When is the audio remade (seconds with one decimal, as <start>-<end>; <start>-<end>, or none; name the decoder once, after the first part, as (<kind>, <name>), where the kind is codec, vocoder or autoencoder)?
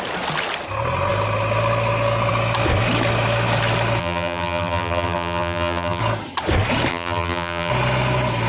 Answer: 4.0-6.0 (vocoder, BigVGAN v2); 6.9-7.7